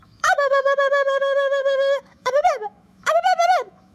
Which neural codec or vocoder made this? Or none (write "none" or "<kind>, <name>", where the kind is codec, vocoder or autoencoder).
autoencoder, DAC-VAE